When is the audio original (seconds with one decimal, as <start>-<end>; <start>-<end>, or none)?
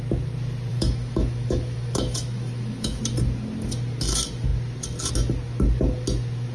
0.0-0.7; 3.0-6.5